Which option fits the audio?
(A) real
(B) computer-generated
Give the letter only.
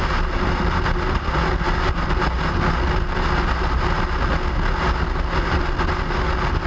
A